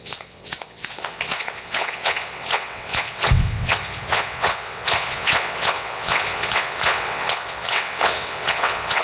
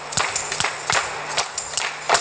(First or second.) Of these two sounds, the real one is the second